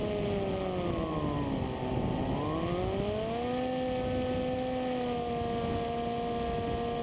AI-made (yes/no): no